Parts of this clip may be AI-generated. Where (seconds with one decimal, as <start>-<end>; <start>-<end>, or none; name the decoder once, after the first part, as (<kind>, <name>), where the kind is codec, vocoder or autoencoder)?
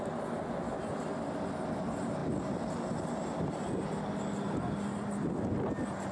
none